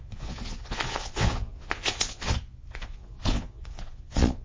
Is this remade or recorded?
remade